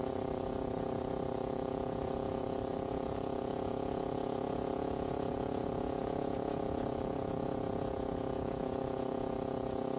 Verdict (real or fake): fake